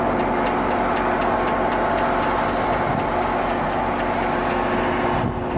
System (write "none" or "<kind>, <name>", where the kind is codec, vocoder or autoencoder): none